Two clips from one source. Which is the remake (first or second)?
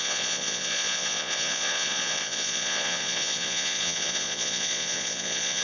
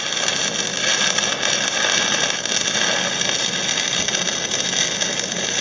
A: first